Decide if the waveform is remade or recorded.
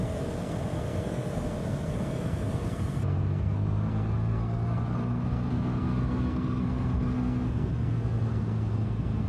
remade